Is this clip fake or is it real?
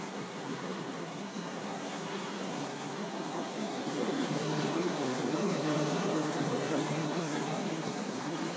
fake